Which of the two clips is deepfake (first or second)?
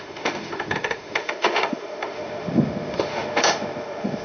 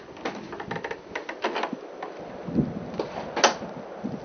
first